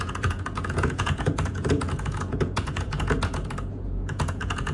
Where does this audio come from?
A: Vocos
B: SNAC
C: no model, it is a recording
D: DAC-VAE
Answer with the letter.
A